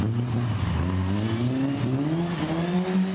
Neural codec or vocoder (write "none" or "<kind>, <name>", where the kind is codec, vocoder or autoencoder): none